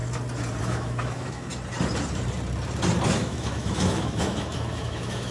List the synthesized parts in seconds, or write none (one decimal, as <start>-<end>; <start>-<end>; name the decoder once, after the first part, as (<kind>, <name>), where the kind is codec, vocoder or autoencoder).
0.6-1.5 (autoencoder, DAC-VAE); 3.1-5.3